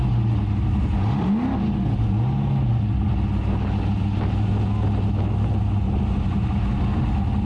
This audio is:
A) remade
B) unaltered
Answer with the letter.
B